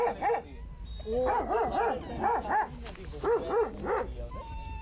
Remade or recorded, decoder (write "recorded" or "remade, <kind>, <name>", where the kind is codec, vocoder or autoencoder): recorded